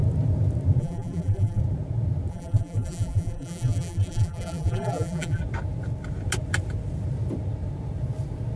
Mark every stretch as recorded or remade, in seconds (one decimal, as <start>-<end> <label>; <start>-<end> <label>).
0.0-0.8 recorded; 0.8-1.6 remade; 1.6-2.3 recorded; 2.3-5.4 remade; 5.4-8.6 recorded